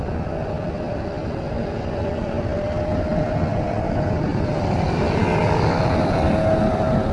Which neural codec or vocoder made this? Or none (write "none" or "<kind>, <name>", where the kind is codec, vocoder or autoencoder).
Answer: none